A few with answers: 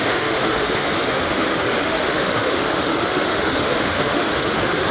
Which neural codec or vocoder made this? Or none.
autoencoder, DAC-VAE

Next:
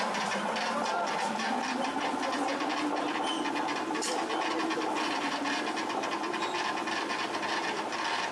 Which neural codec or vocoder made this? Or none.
none